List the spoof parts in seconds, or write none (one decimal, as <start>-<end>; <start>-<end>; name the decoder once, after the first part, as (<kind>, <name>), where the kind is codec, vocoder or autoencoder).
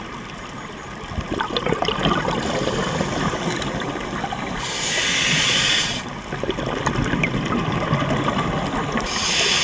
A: 5.2-6.0 (vocoder, Vocos)